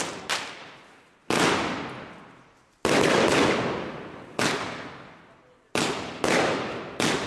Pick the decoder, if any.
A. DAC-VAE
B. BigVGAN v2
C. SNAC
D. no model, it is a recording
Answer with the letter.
D